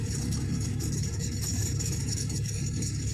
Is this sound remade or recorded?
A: remade